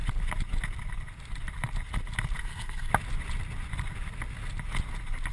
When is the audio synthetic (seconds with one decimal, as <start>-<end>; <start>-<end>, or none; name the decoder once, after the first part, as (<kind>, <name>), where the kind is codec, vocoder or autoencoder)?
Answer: 2.4-2.9 (codec, SNAC)